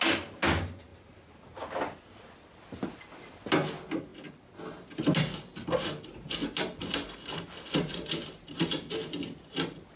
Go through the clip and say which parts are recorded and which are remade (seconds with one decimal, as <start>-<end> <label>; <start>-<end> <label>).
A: 0.0-10.0 recorded